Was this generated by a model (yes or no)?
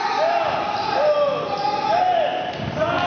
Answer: no